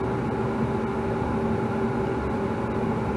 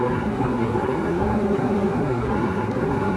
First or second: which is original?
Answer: first